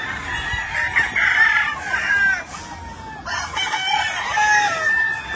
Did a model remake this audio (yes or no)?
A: no